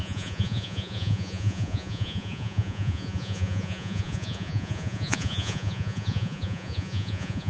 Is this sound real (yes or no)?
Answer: no